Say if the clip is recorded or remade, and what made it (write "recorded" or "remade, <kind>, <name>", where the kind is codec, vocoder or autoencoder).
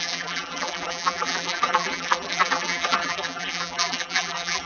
remade, vocoder, BigVGAN v2